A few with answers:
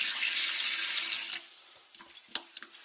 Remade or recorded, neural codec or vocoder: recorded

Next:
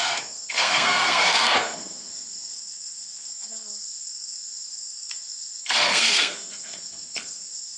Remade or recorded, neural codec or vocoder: remade, codec, SNAC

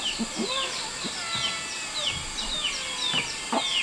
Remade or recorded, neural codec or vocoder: recorded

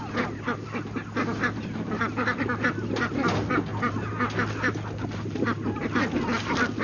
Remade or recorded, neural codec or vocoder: recorded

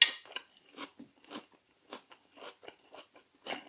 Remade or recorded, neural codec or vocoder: recorded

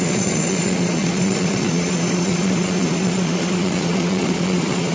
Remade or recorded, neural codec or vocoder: remade, vocoder, Vocos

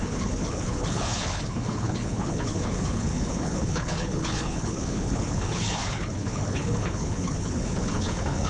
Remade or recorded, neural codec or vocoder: remade, codec, HILCodec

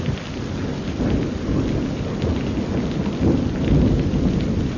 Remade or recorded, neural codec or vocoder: recorded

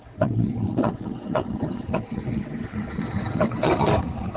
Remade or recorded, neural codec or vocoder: remade, vocoder, WaveNeXt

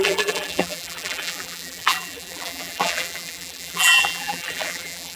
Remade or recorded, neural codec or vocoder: remade, vocoder, BigVGAN v2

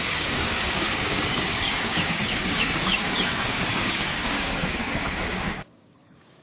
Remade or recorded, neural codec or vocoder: remade, codec, DAC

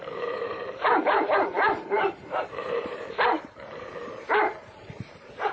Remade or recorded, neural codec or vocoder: remade, vocoder, BigVGAN v2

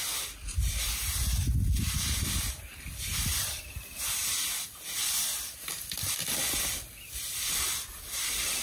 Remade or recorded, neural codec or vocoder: recorded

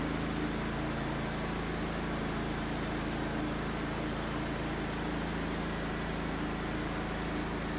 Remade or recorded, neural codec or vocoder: recorded